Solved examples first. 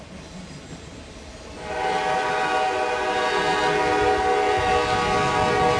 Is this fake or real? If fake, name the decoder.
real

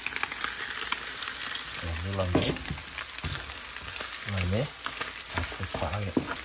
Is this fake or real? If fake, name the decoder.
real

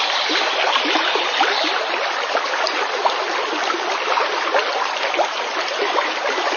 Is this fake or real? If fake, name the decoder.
real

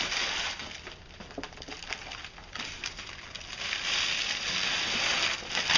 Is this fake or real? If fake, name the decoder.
real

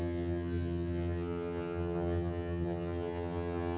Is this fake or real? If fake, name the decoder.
fake, vocoder, HiFi-GAN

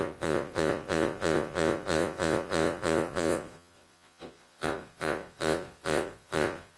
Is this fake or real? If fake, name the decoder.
fake, vocoder, Vocos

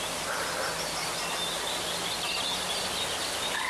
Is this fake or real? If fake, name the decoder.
real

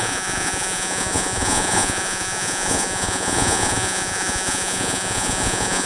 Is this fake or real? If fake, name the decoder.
fake, vocoder, Vocos